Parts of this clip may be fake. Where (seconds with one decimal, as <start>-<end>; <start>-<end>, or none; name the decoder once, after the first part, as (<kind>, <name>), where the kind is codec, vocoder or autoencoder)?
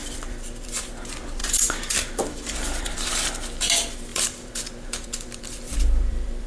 0.0-0.9 (vocoder, BigVGAN v2); 1.4-3.1; 4.1-6.5